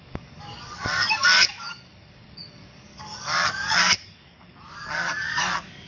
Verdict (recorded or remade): remade